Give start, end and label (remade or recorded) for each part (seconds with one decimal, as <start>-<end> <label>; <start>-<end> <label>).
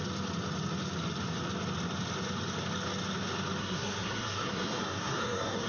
0.0-3.6 recorded; 3.6-5.7 remade